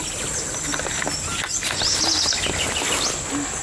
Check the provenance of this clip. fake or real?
real